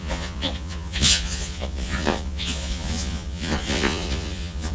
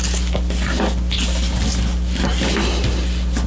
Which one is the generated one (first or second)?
first